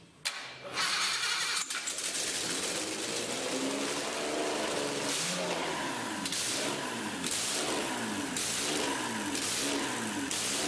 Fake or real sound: real